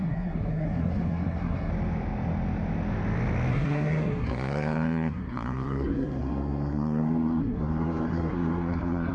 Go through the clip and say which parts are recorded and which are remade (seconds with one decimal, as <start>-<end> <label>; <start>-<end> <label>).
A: 0.0-1.7 remade; 1.7-3.5 recorded; 3.5-9.1 remade

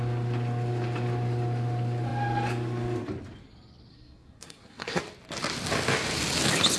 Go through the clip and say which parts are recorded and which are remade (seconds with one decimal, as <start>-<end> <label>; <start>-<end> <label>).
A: 0.0-3.9 recorded; 3.9-5.0 remade; 5.0-6.8 recorded

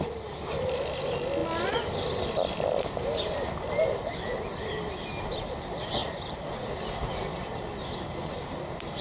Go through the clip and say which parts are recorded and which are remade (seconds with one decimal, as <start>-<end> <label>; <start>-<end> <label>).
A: 0.0-6.0 recorded; 6.0-6.5 remade; 6.5-7.3 recorded; 7.3-9.0 remade